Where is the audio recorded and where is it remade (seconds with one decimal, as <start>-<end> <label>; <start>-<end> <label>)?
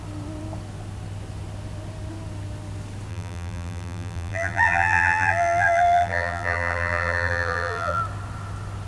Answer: 0.0-3.1 recorded; 3.1-8.0 remade; 8.0-8.9 recorded